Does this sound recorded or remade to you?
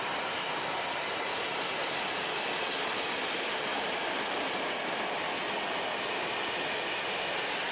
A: recorded